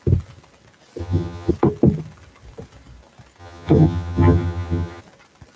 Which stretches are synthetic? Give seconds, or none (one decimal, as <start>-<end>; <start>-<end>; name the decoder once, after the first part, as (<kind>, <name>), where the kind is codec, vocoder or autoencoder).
1.0-1.5 (vocoder, HiFi-GAN); 3.4-5.0